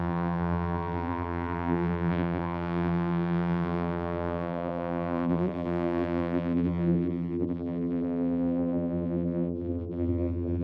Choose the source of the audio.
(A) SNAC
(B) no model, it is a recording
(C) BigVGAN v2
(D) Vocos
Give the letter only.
C